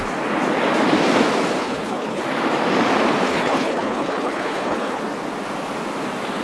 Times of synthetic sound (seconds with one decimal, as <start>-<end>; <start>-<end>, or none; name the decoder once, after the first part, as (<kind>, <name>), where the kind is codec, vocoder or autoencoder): 1.6-2.2 (codec, HILCodec); 3.3-5.0